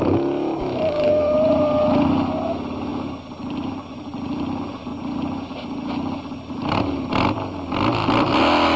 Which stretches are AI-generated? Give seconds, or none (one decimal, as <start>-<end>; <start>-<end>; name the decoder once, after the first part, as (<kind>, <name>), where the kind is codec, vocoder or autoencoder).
none